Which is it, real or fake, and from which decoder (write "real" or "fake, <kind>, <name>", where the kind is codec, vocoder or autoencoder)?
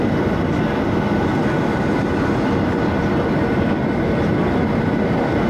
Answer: real